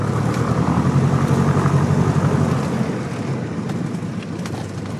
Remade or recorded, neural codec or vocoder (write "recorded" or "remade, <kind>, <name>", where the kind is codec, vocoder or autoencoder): recorded